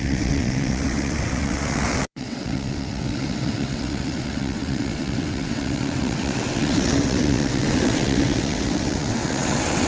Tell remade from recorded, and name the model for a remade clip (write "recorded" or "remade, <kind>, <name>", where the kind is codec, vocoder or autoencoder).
remade, vocoder, WaveNeXt